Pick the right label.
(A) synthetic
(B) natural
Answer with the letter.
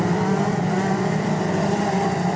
A